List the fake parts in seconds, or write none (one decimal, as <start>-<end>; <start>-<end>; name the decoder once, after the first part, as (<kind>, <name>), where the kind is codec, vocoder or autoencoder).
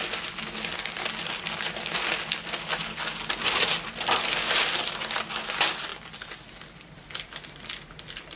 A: none